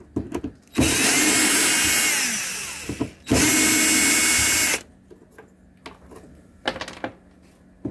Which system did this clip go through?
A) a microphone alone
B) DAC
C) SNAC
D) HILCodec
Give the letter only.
A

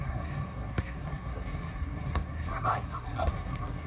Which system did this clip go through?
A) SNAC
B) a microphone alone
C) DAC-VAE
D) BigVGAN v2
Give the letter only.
A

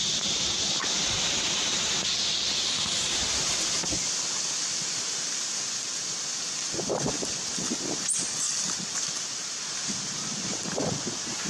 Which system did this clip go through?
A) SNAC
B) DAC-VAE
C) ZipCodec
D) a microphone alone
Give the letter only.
D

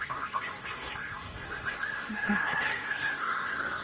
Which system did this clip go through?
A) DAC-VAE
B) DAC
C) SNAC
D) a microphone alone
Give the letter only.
C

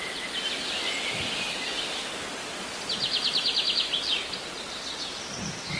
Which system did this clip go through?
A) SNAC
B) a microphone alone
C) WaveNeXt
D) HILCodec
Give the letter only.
B